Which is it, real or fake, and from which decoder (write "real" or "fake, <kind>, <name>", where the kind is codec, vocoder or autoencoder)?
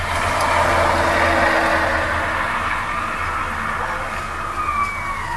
real